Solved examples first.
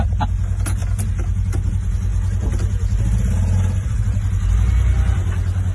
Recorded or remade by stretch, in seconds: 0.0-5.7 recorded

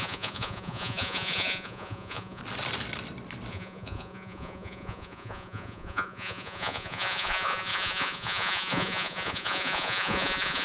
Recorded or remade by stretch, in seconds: 0.0-2.4 remade; 2.4-3.5 recorded; 3.5-10.6 remade